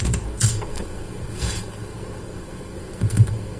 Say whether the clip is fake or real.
fake